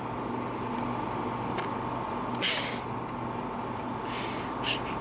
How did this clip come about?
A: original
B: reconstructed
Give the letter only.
A